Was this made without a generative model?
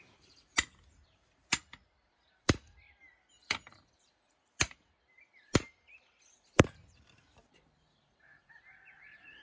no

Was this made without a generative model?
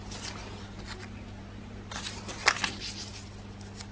yes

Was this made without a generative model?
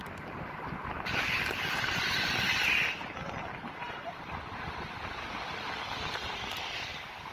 yes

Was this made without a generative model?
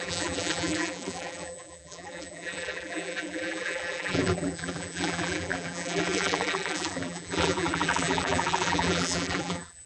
no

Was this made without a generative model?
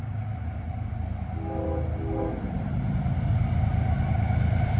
no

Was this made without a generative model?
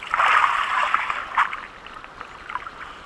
no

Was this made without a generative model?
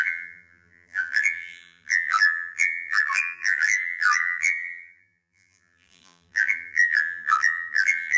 no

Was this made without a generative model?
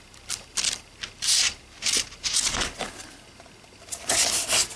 yes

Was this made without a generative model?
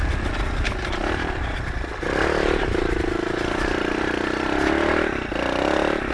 yes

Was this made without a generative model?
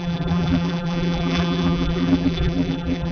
no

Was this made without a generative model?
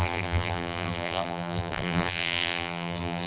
no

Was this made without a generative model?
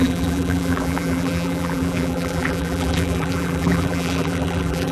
no